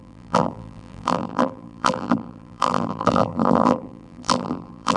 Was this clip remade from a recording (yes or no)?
yes